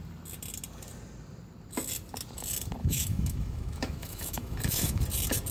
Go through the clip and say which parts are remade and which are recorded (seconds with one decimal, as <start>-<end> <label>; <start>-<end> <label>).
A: 0.0-2.8 recorded; 2.8-5.0 remade; 5.0-5.5 recorded